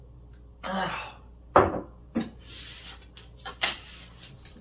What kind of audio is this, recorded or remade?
remade